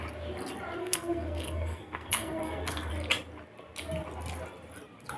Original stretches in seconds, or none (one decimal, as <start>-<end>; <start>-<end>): 0.0-0.8; 2.9-5.2